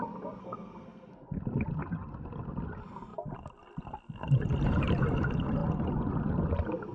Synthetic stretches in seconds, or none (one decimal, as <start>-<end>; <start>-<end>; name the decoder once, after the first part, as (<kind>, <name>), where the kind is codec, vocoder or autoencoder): 0.4-1.1 (codec, SNAC)